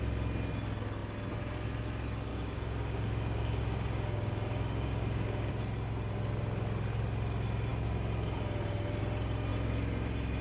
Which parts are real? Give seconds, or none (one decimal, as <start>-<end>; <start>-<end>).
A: 0.0-2.3; 5.5-10.4

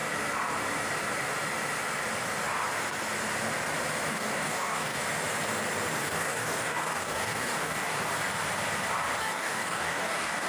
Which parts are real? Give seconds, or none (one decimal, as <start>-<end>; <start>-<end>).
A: 0.0-4.1; 5.0-6.0; 8.1-9.2

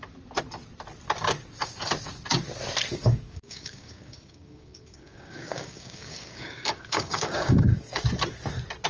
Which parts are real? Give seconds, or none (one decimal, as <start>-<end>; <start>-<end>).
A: 0.0-2.9; 8.0-8.9

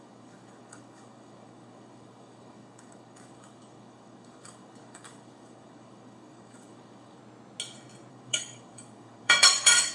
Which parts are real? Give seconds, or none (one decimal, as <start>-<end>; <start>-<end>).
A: 7.2-8.1

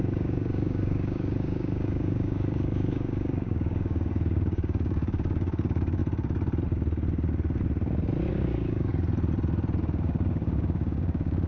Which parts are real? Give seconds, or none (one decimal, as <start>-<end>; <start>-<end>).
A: 6.0-8.3; 8.9-9.8